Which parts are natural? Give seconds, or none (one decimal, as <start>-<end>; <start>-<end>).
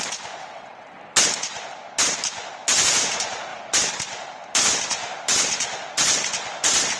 0.0-0.4; 1.0-7.0